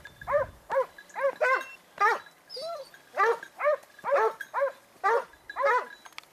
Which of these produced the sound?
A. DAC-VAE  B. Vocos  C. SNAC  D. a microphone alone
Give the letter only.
D